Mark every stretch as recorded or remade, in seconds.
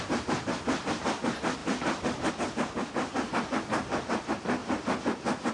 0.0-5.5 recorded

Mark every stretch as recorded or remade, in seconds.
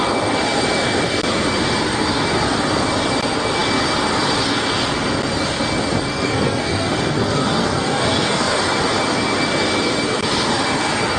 0.0-6.1 recorded; 6.1-8.6 remade; 8.6-11.2 recorded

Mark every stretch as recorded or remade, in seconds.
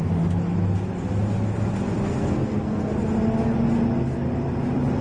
0.0-2.1 recorded; 2.1-2.9 remade; 2.9-5.0 recorded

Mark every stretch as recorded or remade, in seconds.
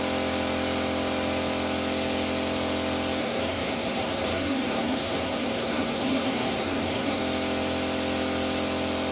0.0-3.2 recorded; 3.2-7.2 remade; 7.2-9.1 recorded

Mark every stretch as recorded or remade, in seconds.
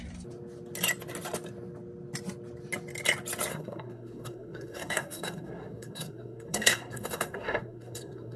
0.0-3.5 recorded; 3.5-8.4 remade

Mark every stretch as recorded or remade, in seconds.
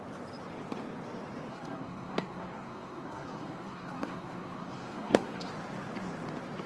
0.0-1.5 recorded; 1.5-5.5 remade; 5.5-6.7 recorded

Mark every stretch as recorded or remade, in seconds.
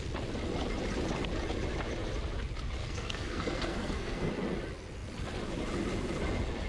0.0-2.8 recorded; 2.8-4.3 remade; 4.3-6.7 recorded